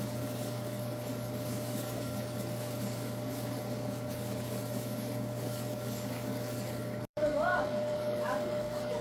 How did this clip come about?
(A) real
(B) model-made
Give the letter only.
B